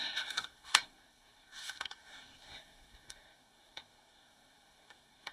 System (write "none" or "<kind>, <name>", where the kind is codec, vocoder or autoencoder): codec, SNAC